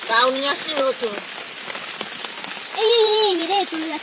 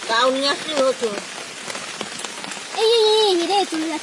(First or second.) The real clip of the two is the second